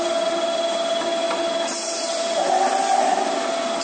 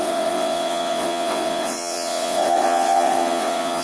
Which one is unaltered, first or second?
first